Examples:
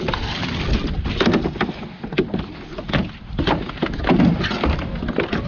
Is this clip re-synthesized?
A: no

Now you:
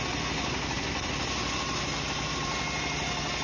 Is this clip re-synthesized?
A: no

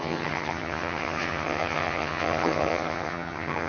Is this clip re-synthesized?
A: yes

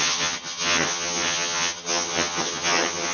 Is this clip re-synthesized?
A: yes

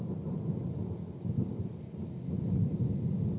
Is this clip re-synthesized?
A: no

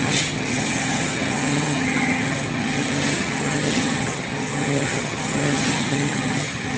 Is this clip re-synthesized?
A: yes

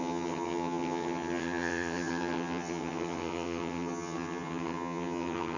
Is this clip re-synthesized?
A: yes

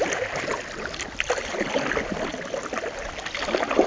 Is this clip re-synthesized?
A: no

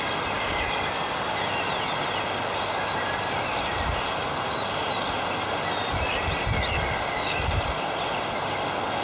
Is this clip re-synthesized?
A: no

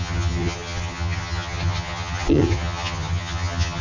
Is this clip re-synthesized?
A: yes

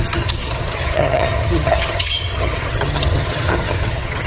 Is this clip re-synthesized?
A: yes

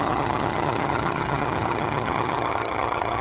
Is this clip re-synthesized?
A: yes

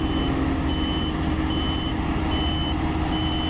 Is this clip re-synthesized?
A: no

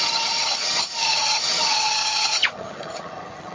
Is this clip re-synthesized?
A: yes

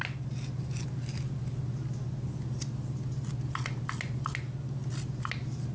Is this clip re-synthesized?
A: no